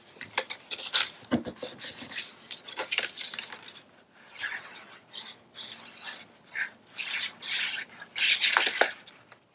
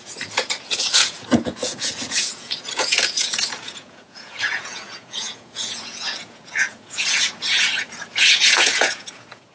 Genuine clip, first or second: first